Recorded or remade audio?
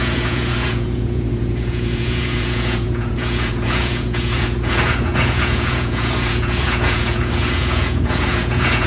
remade